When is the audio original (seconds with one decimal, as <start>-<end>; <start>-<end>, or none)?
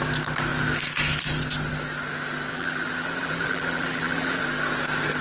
0.0-2.5; 4.4-5.2